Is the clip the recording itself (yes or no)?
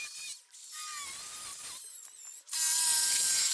yes